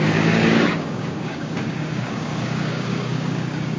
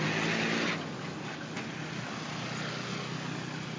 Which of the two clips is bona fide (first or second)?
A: second